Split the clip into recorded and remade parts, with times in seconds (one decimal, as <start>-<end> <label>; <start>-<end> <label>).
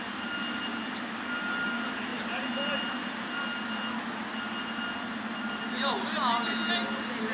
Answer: 0.0-7.3 recorded